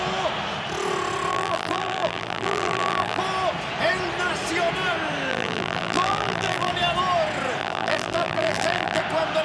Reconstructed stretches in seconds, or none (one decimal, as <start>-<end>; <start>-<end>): 1.3-3.2; 5.3-6.7; 7.6-9.0